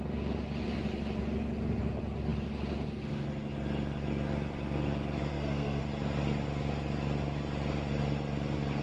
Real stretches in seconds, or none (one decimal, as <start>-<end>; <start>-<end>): 0.0-5.3; 5.8-8.8